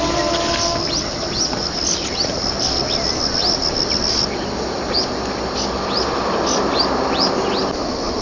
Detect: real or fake real